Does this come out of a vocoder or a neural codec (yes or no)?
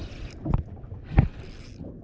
no